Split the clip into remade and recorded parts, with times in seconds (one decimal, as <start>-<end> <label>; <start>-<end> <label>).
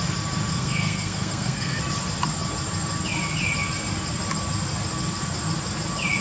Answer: 0.0-0.5 recorded; 0.5-1.8 remade; 1.8-6.2 recorded